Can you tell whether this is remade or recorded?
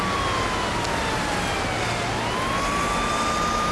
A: recorded